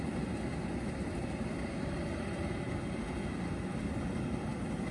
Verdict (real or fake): real